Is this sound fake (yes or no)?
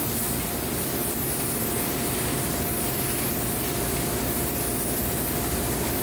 no